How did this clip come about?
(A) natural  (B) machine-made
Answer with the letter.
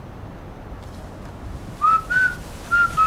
A